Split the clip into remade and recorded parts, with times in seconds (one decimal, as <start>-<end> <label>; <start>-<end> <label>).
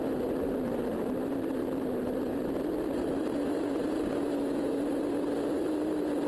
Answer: 0.0-6.3 recorded